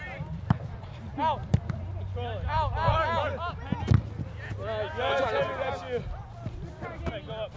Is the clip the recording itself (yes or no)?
yes